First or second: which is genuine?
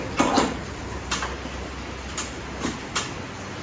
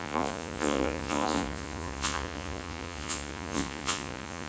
first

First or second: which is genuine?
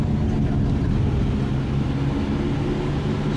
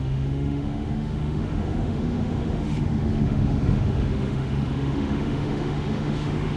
first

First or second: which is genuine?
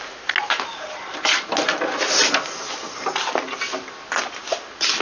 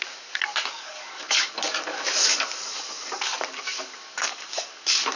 first